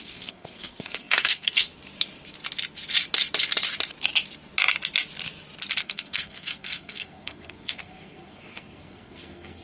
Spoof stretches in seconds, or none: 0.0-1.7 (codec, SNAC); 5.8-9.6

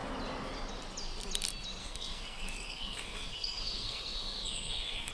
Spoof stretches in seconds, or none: 1.8-5.1 (codec, SNAC)

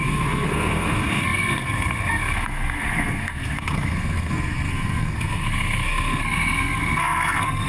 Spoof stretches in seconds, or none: 0.0-7.7 (codec, SNAC)

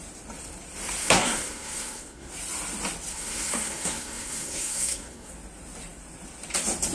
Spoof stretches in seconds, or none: 1.0-2.3 (codec, SNAC); 3.1-5.3